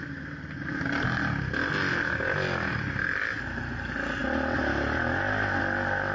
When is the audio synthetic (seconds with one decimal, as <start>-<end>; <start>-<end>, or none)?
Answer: none